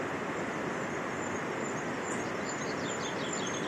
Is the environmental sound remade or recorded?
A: recorded